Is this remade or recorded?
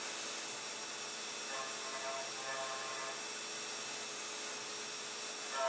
recorded